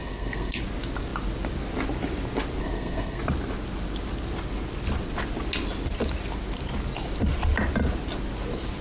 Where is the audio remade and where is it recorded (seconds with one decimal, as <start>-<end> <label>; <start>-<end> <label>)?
0.0-0.6 remade; 0.6-2.6 recorded; 2.6-3.2 remade; 3.2-8.8 recorded